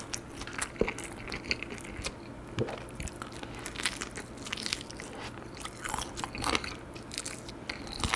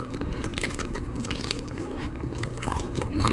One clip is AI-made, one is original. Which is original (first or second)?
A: first